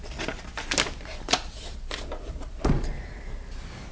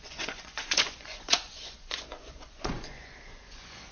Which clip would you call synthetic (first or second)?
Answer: second